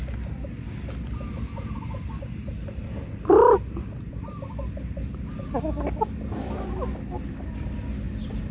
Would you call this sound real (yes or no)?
yes